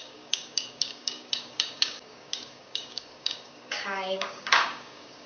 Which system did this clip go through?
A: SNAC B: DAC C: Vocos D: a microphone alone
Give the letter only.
B